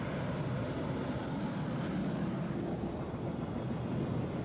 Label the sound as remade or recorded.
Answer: recorded